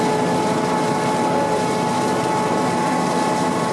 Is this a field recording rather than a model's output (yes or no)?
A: yes